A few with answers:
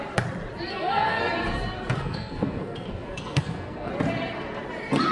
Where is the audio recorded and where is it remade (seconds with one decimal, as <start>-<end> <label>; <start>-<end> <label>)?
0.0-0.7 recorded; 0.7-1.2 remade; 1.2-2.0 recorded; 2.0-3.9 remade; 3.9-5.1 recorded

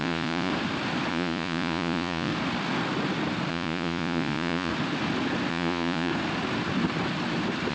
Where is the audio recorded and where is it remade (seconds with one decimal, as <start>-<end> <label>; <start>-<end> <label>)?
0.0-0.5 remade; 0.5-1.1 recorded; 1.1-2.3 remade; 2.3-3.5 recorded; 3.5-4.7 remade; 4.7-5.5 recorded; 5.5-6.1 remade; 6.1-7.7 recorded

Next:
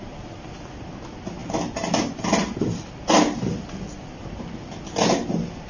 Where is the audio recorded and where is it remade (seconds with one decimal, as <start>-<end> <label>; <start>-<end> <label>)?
0.0-5.7 recorded